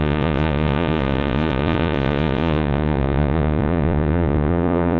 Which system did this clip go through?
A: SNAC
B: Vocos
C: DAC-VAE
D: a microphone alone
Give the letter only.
B